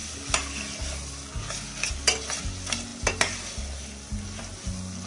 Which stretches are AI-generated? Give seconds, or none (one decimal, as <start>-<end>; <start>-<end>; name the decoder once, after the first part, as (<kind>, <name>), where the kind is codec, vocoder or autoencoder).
none